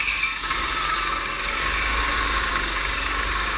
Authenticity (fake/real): fake